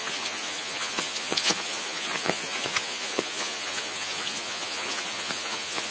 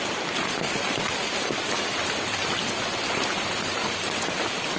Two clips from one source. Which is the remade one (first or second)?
first